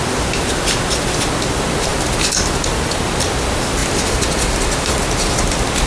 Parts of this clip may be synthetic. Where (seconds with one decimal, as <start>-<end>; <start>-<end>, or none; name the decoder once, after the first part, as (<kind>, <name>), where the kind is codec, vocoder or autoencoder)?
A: 3.8-4.9 (vocoder, BigVGAN v2)